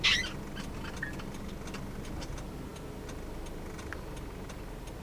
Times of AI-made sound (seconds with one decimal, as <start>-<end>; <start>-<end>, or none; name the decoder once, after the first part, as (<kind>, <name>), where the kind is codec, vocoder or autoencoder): none